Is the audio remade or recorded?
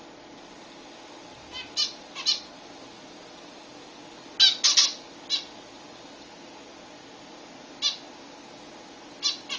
recorded